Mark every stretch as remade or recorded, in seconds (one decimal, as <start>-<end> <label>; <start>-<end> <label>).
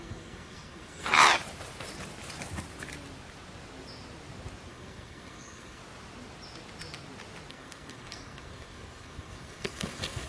0.0-1.2 remade; 1.2-4.7 recorded; 4.7-5.8 remade; 5.8-7.5 recorded; 7.5-10.3 remade